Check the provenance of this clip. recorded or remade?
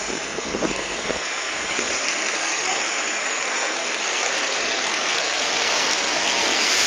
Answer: remade